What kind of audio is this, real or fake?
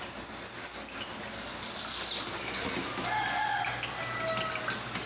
real